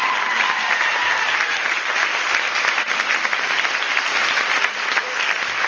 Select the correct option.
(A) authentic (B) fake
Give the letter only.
A